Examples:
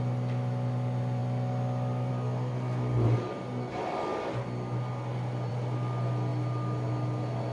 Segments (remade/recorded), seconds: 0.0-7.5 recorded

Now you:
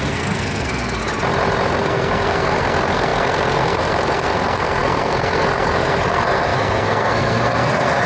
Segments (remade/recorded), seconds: 0.0-1.0 remade; 1.0-1.7 recorded; 1.7-8.1 remade